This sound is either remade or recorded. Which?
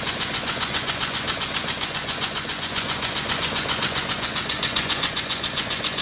remade